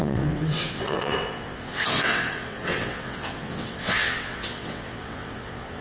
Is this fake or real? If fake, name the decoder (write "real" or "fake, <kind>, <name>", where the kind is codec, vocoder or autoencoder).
fake, vocoder, WaveNeXt